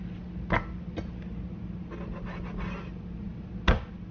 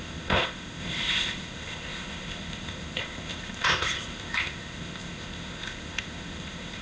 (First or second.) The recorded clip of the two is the first